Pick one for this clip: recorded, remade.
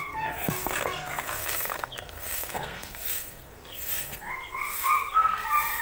remade